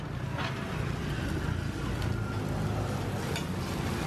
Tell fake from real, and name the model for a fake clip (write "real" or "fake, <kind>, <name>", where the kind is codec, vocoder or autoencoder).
real